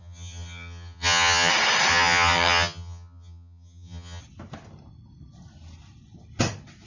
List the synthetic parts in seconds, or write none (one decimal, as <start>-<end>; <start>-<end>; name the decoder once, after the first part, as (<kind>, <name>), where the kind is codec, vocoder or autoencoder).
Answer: 0.0-1.5 (vocoder, HiFi-GAN); 1.9-4.2